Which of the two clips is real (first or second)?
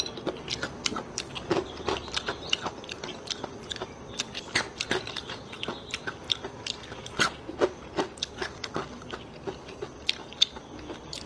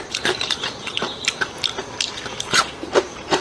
first